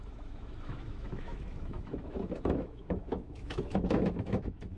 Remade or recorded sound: remade